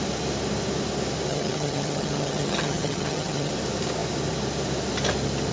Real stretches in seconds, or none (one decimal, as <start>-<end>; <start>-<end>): 0.0-1.3; 3.5-5.5